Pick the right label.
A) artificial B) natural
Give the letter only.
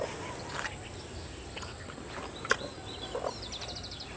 B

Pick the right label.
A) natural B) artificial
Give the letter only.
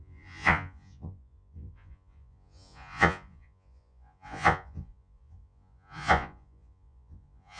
B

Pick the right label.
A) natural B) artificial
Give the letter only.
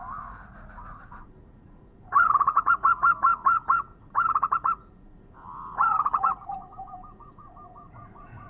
B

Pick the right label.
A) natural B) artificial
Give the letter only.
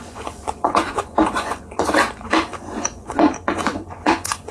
B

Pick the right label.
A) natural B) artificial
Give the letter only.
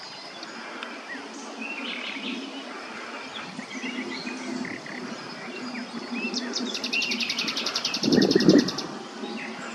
A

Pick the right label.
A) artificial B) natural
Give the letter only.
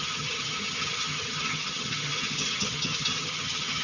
A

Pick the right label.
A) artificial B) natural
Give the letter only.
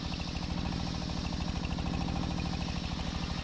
B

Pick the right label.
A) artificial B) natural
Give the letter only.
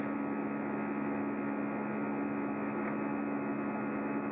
B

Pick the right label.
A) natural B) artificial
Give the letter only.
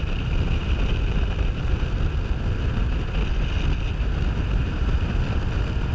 A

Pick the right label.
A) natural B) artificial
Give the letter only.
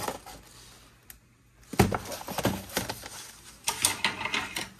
A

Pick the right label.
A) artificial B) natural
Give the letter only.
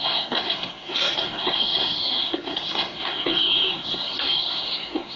A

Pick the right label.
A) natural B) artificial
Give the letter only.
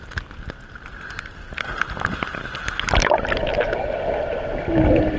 A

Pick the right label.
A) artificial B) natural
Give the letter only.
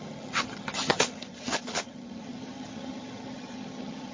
A